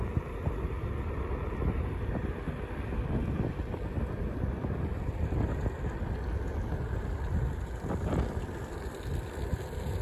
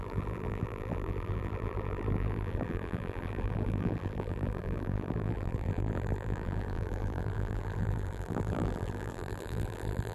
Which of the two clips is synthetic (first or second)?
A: second